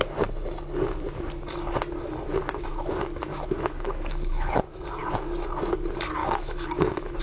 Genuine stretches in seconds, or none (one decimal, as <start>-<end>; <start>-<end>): 0.0-2.7; 4.6-6.2